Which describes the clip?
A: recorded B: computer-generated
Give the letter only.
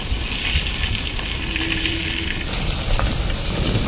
A